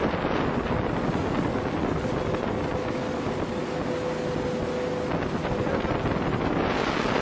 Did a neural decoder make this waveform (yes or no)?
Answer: no